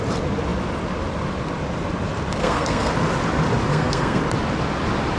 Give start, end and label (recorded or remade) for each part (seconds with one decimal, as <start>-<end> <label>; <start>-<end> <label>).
0.0-2.4 recorded; 2.4-2.9 remade; 2.9-3.7 recorded; 3.7-4.2 remade; 4.2-5.2 recorded